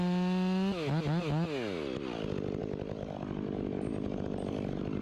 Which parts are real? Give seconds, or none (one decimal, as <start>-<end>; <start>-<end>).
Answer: 0.0-5.0